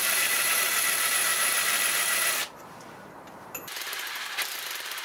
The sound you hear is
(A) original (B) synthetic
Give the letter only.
B